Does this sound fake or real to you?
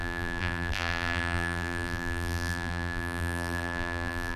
fake